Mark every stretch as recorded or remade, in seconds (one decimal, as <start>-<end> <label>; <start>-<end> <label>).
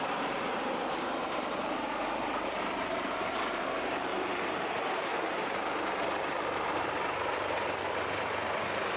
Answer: 0.0-4.1 remade; 4.1-4.7 recorded; 4.7-9.0 remade